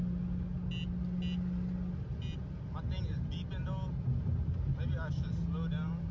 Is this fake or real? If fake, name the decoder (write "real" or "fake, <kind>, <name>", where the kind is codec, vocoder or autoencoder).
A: real